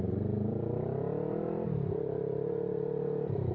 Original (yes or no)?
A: no